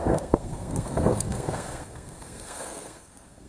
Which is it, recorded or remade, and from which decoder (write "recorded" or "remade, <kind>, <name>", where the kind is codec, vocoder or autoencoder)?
remade, codec, SNAC